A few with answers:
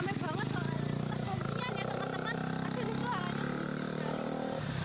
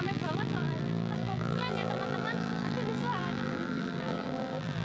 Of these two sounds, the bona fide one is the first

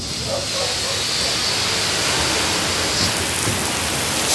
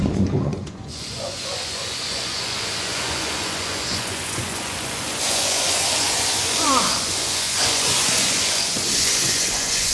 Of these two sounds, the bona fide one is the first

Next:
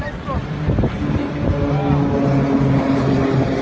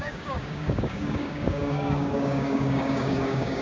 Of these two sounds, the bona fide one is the first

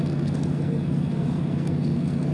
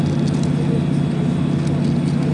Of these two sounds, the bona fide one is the second